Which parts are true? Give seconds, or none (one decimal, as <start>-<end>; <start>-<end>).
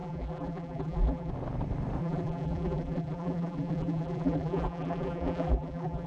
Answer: 1.3-2.0